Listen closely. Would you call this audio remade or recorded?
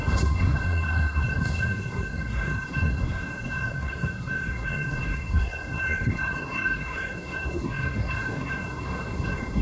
remade